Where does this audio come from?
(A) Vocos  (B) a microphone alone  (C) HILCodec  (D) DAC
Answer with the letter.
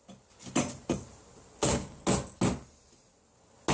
B